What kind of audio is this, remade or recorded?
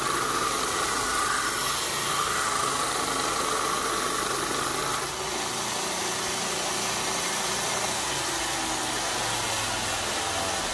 recorded